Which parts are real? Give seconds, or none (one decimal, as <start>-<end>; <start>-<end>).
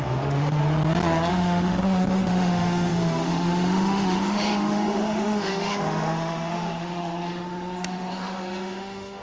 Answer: 0.6-1.3